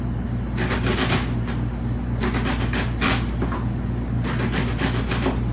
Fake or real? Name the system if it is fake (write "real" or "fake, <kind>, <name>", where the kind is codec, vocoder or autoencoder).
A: real